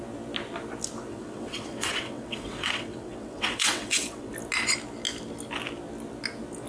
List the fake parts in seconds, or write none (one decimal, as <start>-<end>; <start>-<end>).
1.1-4.3

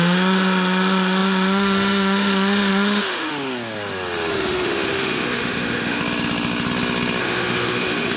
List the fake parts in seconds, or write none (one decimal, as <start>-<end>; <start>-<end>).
0.0-3.3; 4.3-6.0; 7.2-8.2

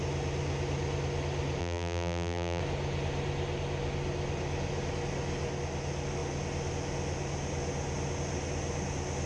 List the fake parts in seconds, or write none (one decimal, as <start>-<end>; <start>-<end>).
1.6-2.6